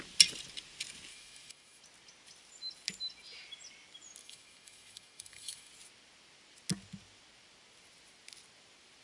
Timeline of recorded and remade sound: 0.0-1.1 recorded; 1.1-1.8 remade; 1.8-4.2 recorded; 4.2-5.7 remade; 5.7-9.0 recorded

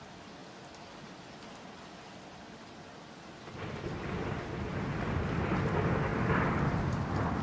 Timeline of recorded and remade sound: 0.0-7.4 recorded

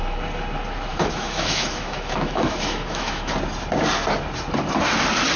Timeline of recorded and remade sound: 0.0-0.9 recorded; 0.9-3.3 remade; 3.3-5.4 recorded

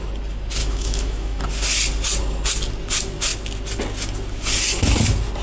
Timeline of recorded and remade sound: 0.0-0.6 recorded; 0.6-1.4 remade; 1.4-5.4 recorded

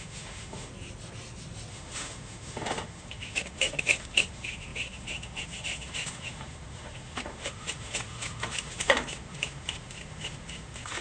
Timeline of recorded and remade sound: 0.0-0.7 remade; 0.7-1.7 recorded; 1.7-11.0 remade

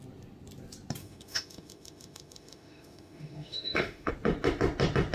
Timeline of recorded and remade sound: 0.0-1.0 recorded; 1.0-4.1 remade; 4.1-5.1 recorded